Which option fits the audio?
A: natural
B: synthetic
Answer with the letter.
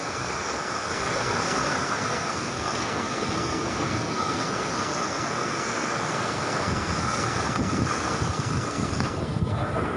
B